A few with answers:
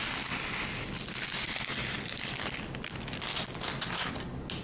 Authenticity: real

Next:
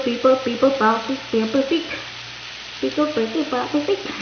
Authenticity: real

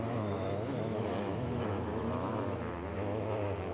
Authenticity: fake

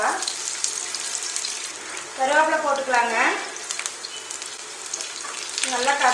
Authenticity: real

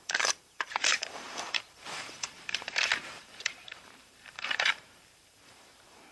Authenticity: fake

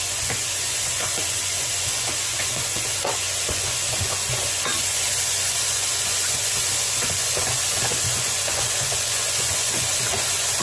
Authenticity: fake